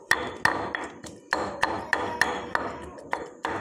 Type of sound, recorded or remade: recorded